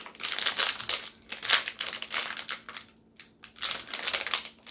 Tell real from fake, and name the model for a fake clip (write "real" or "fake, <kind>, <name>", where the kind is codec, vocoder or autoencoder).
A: real